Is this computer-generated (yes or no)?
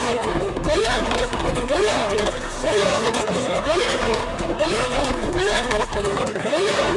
yes